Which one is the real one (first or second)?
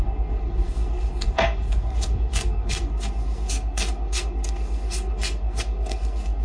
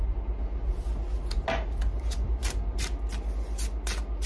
second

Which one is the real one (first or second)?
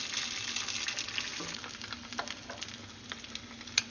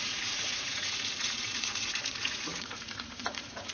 first